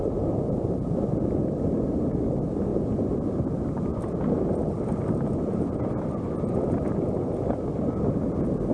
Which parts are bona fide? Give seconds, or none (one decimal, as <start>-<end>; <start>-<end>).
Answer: 0.0-8.7